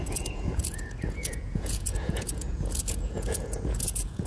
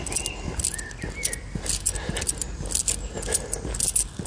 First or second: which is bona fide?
second